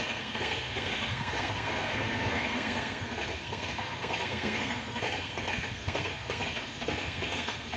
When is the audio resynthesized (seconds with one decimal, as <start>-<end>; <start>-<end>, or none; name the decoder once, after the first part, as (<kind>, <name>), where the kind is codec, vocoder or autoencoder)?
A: 0.0-7.8 (codec, SNAC)